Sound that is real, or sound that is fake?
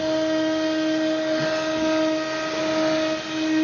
real